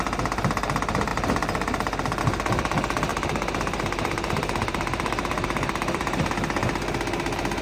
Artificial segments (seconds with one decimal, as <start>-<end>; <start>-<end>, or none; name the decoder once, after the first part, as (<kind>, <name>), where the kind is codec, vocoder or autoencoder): 3.1-6.3 (vocoder, BigVGAN v2)